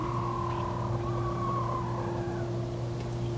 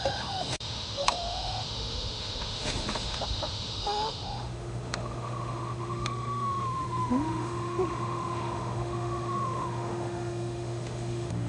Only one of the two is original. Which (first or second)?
first